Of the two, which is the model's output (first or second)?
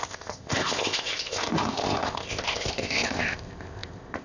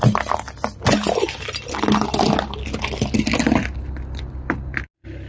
first